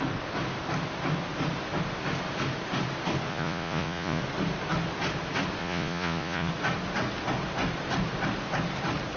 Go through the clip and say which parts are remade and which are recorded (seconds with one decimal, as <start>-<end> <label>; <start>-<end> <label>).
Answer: 0.0-3.3 recorded; 3.3-4.2 remade; 4.2-5.6 recorded; 5.6-6.5 remade; 6.5-9.2 recorded